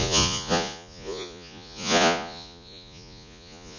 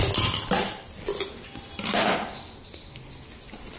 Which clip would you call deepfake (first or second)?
first